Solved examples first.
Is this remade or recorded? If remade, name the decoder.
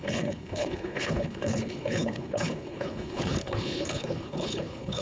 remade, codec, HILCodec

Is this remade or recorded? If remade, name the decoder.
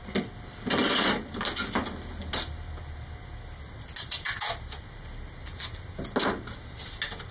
recorded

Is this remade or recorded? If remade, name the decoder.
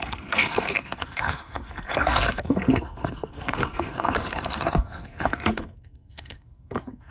remade, codec, SNAC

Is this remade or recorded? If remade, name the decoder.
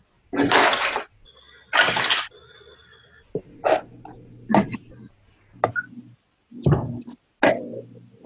recorded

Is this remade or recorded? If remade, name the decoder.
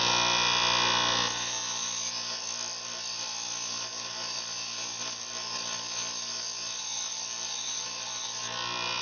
recorded